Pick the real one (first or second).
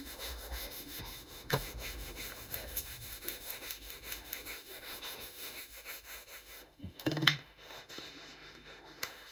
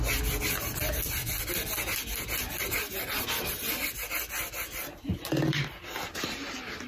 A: second